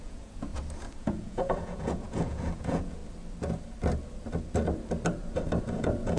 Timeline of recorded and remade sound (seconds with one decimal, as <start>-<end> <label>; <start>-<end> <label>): 0.0-0.5 remade; 0.5-1.0 recorded; 1.0-3.0 remade; 3.0-5.6 recorded; 5.6-6.2 remade